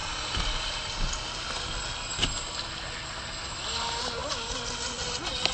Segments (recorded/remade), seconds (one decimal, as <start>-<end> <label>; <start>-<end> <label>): 0.0-5.5 recorded